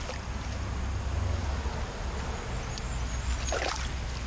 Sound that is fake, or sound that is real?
real